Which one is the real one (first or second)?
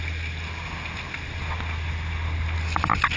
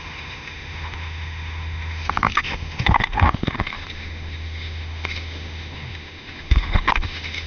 first